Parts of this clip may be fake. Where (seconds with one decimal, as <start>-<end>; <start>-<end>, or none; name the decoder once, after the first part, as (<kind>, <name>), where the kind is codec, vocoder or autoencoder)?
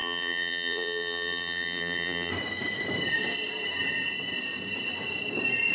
0.0-2.3 (vocoder, BigVGAN v2)